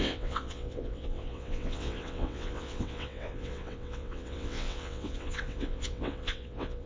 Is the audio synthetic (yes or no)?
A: yes